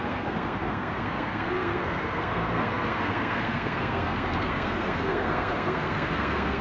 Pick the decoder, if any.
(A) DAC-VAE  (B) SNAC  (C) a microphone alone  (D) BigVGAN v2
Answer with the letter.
B